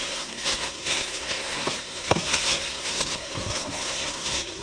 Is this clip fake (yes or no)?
yes